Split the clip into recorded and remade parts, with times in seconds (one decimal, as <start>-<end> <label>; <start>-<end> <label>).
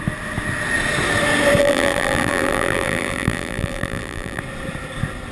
0.0-1.6 recorded; 1.6-4.4 remade; 4.4-5.3 recorded